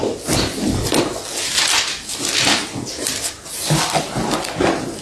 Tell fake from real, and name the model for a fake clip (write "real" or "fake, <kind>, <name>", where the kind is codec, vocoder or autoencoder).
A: real